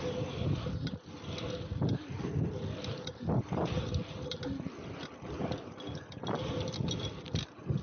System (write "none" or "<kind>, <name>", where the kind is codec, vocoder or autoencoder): none